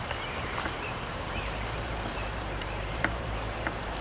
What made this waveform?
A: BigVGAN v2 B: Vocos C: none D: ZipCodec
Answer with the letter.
A